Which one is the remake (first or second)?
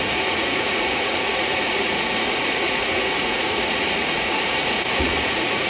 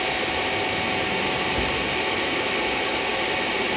first